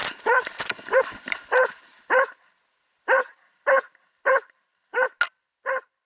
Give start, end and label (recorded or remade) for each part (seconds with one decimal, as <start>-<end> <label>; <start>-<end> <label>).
0.0-1.9 remade; 1.9-2.9 recorded; 2.9-4.9 remade; 4.9-6.0 recorded